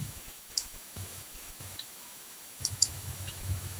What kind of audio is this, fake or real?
fake